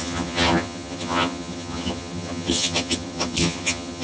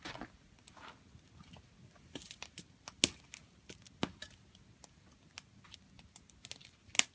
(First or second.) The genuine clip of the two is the second